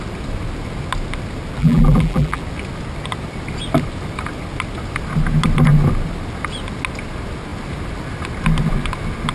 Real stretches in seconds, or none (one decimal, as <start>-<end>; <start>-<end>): 0.0-1.6; 2.4-9.3